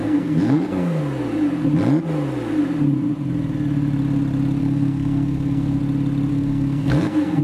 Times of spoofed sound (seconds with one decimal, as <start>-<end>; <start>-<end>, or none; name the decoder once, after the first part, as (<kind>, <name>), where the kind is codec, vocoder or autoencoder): 0.0-1.0 (codec, SNAC); 4.6-5.8; 6.3-7.4